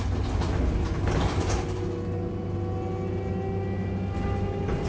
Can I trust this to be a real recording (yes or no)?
yes